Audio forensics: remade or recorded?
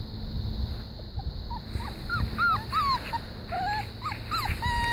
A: recorded